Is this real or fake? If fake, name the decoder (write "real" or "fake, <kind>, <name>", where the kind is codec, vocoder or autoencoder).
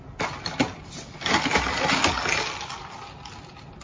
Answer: real